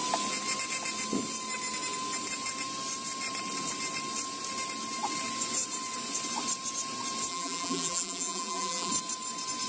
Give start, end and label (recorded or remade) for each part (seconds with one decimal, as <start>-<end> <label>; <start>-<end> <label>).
0.0-7.3 recorded; 7.3-8.9 remade; 8.9-9.7 recorded